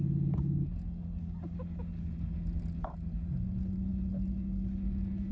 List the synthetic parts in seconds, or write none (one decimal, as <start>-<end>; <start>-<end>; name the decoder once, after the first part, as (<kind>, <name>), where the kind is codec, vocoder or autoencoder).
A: none